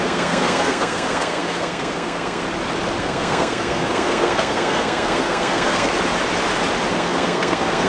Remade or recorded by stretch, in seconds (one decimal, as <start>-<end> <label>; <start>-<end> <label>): 0.0-2.4 remade; 2.4-3.0 recorded; 3.0-5.9 remade; 5.9-6.9 recorded; 6.9-7.9 remade